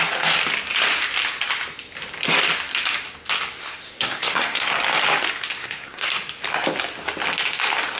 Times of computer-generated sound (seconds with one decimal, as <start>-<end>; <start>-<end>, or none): 3.6-4.7; 5.6-6.1

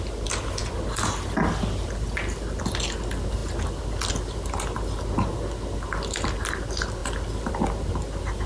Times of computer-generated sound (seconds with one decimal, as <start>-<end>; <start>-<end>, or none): none

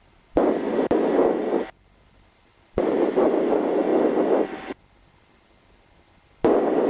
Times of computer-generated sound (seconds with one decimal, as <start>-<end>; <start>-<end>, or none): none